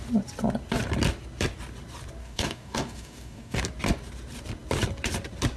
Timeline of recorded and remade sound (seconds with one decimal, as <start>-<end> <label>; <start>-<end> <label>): 0.0-2.2 recorded; 2.2-3.6 remade; 3.6-5.6 recorded